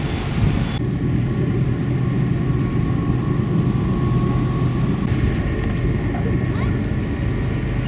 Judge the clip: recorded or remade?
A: recorded